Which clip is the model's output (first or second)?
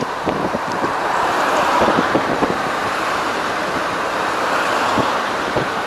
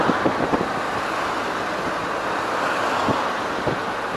first